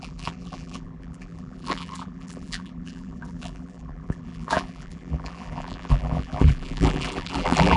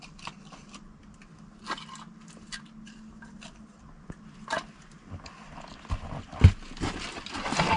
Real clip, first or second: second